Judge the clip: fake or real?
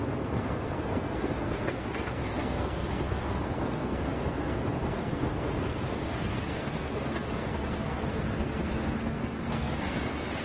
fake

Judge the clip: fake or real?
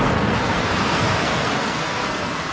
fake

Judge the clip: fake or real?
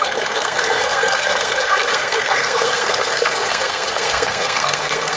fake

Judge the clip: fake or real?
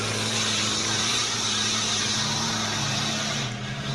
real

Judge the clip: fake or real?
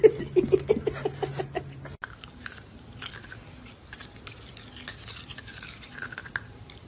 real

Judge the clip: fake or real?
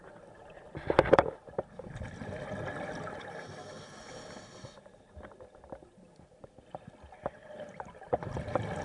real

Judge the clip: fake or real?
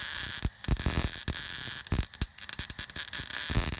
real